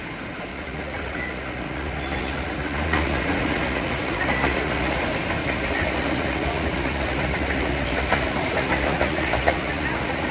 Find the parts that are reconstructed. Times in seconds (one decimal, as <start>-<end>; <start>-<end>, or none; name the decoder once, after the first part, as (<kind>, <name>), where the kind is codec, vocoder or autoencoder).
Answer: 0.5-5.0 (vocoder, Vocos); 5.4-10.3